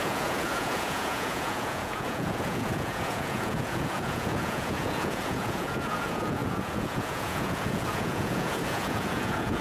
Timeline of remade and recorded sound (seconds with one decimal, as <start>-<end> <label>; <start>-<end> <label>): 0.0-9.6 remade